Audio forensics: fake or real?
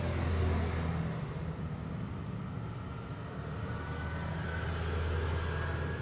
real